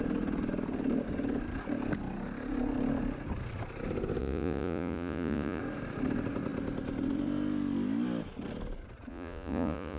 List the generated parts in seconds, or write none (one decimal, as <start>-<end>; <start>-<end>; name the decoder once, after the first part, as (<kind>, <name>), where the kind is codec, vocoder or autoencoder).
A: 4.2-5.6 (vocoder, Vocos); 9.1-10.0